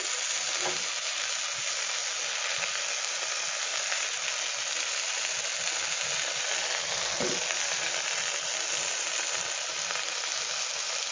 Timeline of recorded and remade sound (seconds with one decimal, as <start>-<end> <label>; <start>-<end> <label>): 0.0-11.1 recorded